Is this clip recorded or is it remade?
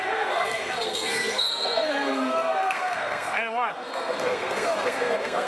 remade